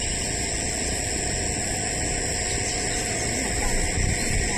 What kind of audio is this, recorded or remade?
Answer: recorded